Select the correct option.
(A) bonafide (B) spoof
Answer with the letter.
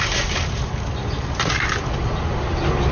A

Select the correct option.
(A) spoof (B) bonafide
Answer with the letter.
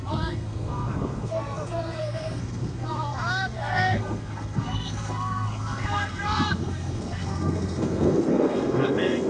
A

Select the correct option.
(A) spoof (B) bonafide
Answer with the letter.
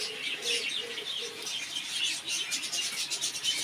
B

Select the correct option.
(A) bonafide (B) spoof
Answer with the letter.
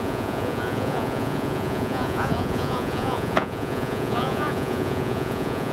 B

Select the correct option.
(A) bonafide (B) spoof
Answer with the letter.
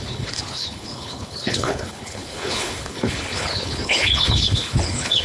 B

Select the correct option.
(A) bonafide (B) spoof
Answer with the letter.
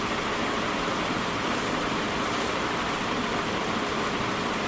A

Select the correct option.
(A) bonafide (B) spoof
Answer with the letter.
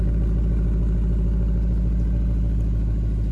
A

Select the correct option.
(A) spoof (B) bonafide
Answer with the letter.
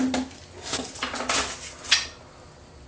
B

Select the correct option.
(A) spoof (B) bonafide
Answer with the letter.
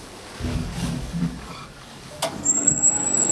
A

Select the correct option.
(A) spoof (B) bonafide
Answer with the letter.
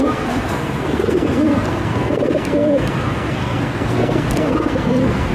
A